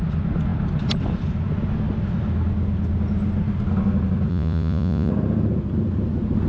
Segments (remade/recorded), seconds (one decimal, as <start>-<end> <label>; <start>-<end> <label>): 0.0-4.3 recorded; 4.3-5.1 remade; 5.1-6.5 recorded